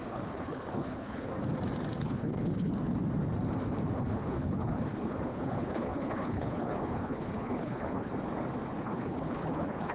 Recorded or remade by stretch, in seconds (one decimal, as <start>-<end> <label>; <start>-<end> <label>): 0.0-1.3 remade; 1.3-2.0 recorded; 2.0-2.7 remade; 2.7-3.9 recorded; 3.9-8.1 remade; 8.1-8.7 recorded; 8.7-9.9 remade